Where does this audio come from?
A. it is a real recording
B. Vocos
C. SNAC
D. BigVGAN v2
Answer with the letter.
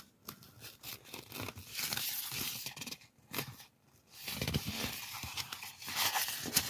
A